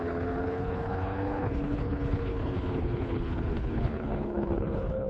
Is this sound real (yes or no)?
no